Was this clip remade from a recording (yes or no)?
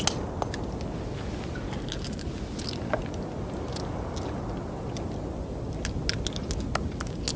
no